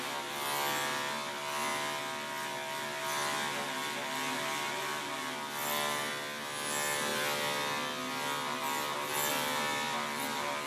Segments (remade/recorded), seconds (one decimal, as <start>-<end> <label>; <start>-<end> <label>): 0.0-10.7 recorded